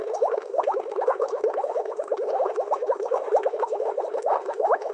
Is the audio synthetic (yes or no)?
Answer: yes